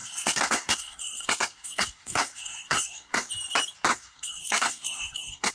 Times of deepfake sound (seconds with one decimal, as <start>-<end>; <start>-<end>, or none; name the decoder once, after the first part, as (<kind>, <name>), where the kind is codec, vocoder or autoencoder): 0.0-3.3 (codec, SNAC); 3.9-5.5